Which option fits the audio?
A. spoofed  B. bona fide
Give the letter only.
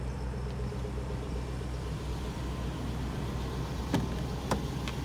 B